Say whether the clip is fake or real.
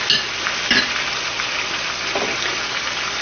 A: real